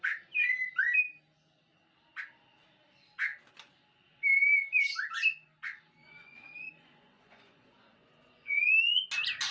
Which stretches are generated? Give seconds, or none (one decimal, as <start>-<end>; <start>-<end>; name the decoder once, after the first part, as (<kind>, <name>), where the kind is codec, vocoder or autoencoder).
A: 6.0-8.7 (vocoder, Vocos)